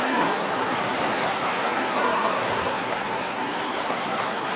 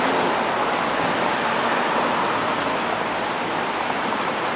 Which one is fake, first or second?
first